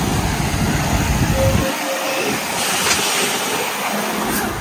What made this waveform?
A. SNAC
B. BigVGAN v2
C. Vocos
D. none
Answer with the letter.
D